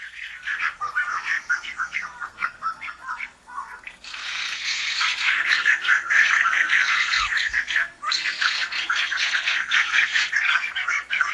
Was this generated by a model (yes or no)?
yes